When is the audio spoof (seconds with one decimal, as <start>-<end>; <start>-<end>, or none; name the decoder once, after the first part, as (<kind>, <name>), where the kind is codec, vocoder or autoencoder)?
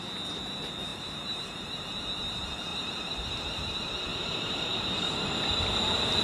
0.9-1.8 (vocoder, BigVGAN v2); 2.7-3.4; 4.1-5.4